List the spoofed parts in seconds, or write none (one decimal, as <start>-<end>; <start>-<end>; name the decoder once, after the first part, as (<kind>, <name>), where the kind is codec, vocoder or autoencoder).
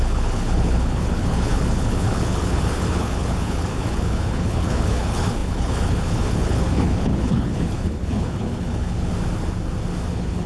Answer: 0.0-9.1 (codec, HILCodec); 10.1-10.5